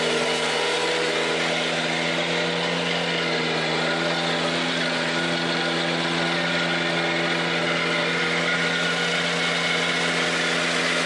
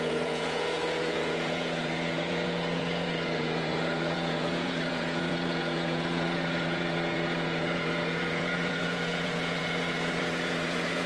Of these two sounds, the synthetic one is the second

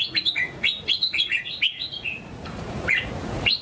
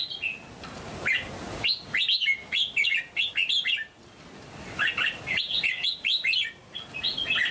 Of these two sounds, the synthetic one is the first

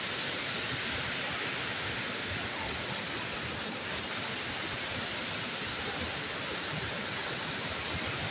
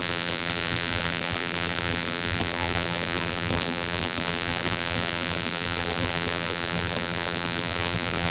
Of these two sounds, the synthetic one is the second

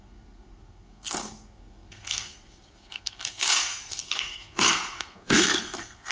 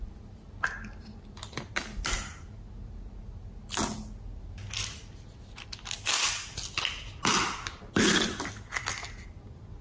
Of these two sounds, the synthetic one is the first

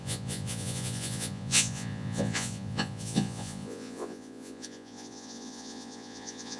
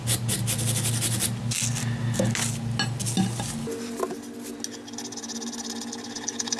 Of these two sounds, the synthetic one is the first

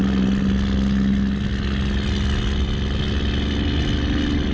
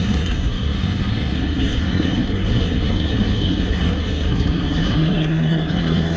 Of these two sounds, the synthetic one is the second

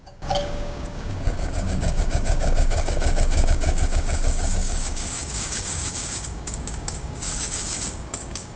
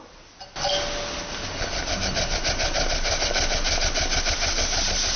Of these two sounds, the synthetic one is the first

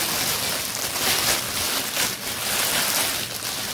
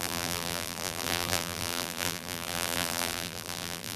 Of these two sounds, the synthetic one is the second